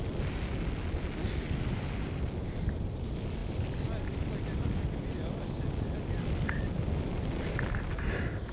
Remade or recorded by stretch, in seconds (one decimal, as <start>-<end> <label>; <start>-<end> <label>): 0.0-2.4 recorded; 2.4-2.9 remade; 2.9-3.4 recorded; 3.4-6.7 remade; 6.7-8.5 recorded